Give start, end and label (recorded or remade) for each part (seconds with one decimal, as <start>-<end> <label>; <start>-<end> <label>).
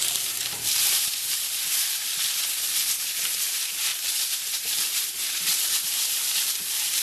0.0-2.1 remade; 2.1-2.6 recorded; 2.6-7.0 remade